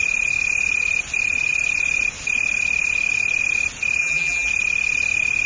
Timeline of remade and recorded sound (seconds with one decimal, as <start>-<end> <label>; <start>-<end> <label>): 0.0-4.0 recorded; 4.0-4.5 remade; 4.5-5.5 recorded